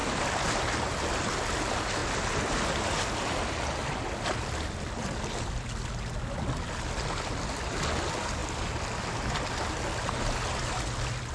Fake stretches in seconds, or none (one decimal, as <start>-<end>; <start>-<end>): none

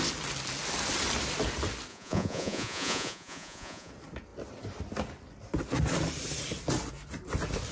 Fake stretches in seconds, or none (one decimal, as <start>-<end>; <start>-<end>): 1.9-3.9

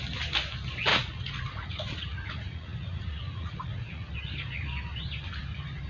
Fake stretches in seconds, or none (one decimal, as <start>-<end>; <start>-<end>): 0.9-4.1

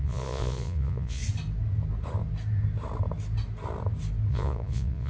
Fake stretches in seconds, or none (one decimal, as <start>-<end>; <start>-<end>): 0.0-1.2; 4.3-5.1